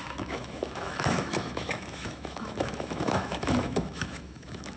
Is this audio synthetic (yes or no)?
yes